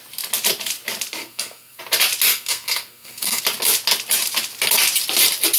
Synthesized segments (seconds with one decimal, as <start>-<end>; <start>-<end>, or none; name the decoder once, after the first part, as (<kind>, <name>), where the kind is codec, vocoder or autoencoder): 1.2-1.8 (codec, SNAC); 2.3-3.4